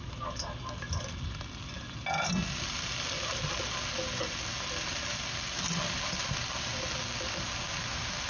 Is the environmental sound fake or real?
real